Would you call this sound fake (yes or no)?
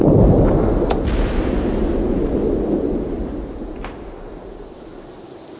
no